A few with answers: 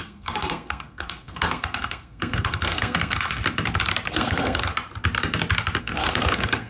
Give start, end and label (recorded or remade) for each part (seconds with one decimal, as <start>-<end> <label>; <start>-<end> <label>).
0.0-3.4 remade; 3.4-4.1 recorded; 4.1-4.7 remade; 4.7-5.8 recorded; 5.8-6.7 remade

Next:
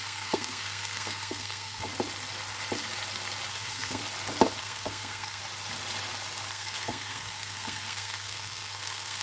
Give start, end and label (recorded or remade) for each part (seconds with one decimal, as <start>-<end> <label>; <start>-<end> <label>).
0.0-1.9 remade; 1.9-3.5 recorded; 3.5-4.0 remade; 4.0-4.6 recorded; 4.6-5.4 remade; 5.4-6.5 recorded; 6.5-9.2 remade

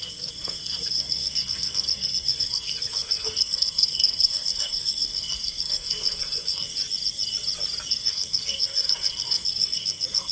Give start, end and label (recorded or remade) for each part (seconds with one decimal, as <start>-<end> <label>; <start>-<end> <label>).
0.0-6.7 remade; 6.7-7.9 recorded; 7.9-10.3 remade